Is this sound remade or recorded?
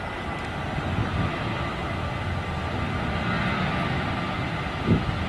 recorded